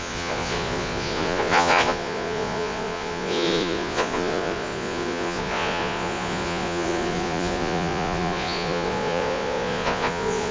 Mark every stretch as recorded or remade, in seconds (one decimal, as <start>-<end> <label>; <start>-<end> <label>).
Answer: 0.0-10.5 remade